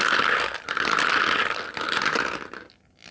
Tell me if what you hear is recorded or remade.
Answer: recorded